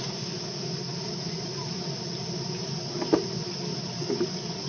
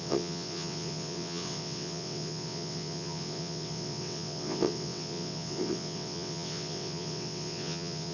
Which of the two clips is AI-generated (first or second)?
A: second